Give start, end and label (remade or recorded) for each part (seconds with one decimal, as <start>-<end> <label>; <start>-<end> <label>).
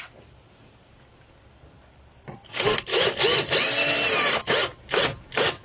0.0-5.6 recorded